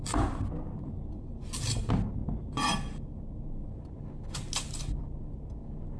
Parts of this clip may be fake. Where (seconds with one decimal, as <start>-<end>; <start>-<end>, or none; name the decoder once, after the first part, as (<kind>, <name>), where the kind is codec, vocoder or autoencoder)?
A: none